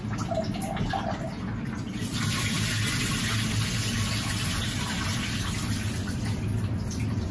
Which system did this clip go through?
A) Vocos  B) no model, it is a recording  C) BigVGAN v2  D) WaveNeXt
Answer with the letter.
B